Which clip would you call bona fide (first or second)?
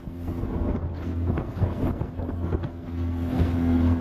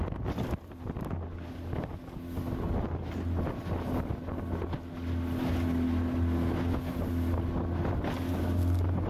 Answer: second